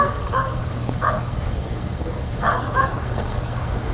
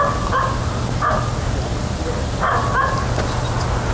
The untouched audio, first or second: second